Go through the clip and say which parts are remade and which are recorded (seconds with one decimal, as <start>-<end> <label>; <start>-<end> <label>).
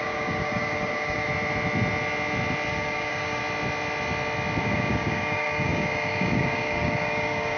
0.0-1.3 remade; 1.3-2.7 recorded; 2.7-3.4 remade; 3.4-4.6 recorded; 4.6-7.6 remade